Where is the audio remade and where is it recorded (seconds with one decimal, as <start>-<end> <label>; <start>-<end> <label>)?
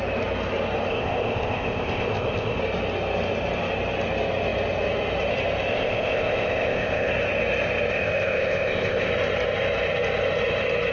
0.0-0.9 recorded; 0.9-2.6 remade; 2.6-5.7 recorded; 5.7-7.1 remade; 7.1-7.9 recorded; 7.9-9.1 remade; 9.1-10.9 recorded